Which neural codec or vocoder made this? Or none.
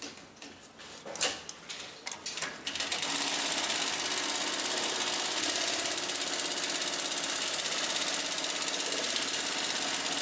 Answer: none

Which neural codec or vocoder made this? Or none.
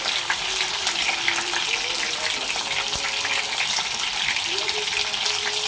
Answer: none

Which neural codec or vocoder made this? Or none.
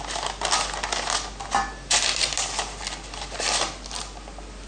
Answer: none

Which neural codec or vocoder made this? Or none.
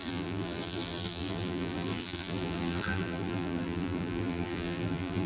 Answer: vocoder, BigVGAN v2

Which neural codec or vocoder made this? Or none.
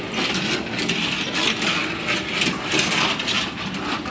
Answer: none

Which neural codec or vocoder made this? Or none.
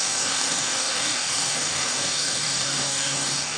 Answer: codec, DAC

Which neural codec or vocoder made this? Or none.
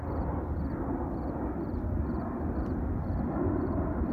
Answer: none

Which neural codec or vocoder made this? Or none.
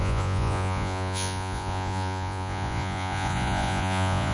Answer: vocoder, Vocos